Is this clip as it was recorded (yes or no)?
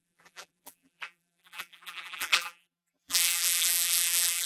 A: no